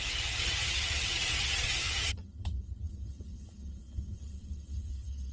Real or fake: fake